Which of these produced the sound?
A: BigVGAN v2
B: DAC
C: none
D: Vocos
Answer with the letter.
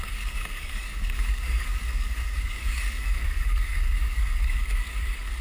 B